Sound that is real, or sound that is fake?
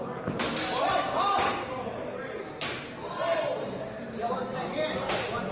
real